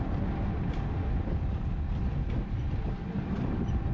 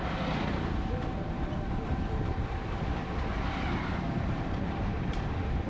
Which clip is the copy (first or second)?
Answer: second